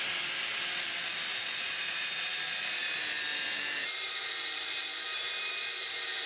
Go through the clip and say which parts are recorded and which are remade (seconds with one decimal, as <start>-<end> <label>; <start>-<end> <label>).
0.0-3.9 recorded; 3.9-6.3 remade

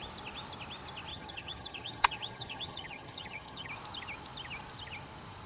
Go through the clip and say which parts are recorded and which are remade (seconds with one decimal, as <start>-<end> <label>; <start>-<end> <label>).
0.0-1.1 recorded; 1.1-3.7 remade; 3.7-5.5 recorded

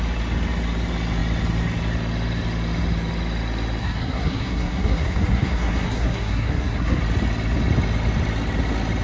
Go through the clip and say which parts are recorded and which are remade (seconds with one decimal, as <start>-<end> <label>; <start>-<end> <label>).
0.0-3.8 recorded; 3.8-7.0 remade; 7.0-9.0 recorded

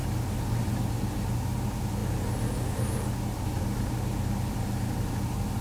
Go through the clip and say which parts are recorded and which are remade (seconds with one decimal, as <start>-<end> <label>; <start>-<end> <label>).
0.0-5.6 recorded

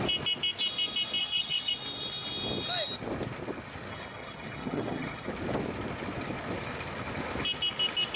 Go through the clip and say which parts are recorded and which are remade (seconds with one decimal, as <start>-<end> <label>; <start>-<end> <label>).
0.0-1.2 recorded; 1.2-1.7 remade; 1.7-3.9 recorded; 3.9-5.3 remade; 5.3-8.2 recorded

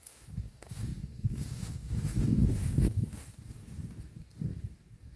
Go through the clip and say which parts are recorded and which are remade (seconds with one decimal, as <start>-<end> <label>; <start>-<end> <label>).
0.0-5.2 remade

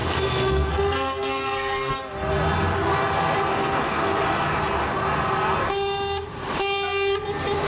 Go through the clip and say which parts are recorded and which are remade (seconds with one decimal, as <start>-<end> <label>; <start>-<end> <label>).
0.0-1.9 remade; 1.9-3.5 recorded; 3.5-4.2 remade; 4.2-7.7 recorded